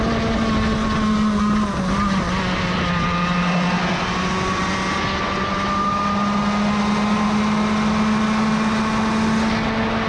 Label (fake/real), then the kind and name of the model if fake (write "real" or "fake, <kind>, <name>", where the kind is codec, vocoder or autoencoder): real